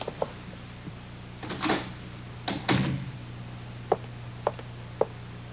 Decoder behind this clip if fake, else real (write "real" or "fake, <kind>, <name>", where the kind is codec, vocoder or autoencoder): real